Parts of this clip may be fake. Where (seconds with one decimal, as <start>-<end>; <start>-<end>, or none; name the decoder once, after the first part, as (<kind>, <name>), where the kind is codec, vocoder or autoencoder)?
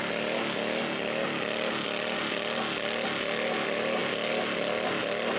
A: none